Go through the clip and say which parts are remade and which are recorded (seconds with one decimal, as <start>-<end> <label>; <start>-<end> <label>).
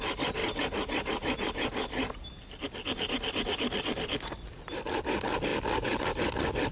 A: 0.0-0.4 recorded; 0.4-2.5 remade; 2.5-5.5 recorded; 5.5-6.0 remade; 6.0-6.7 recorded